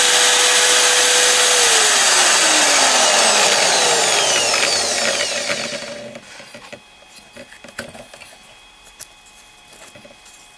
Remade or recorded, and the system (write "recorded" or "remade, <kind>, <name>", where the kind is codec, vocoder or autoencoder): recorded